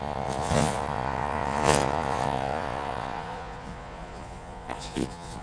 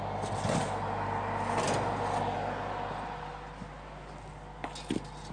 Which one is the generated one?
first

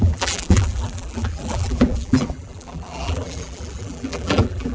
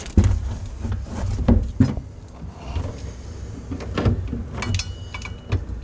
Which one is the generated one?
first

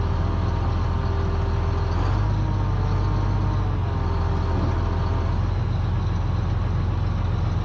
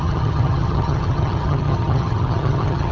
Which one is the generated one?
second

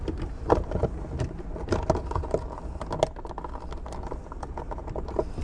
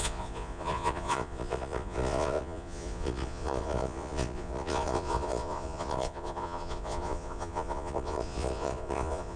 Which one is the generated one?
second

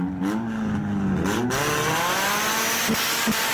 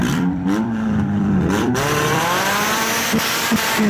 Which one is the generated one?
second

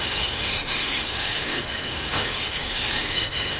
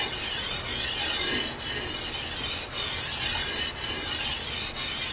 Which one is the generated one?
first